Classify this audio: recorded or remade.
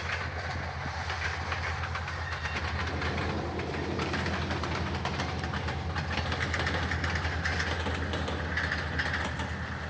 recorded